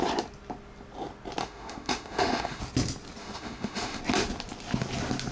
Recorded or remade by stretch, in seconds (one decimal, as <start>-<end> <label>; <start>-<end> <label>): 0.0-1.4 recorded; 1.4-2.6 remade; 2.6-3.2 recorded; 3.2-4.0 remade; 4.0-5.3 recorded